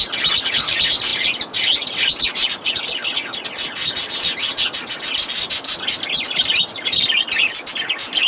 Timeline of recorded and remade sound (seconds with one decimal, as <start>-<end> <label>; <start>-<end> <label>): 0.0-8.3 recorded